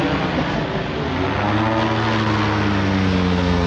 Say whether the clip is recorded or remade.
recorded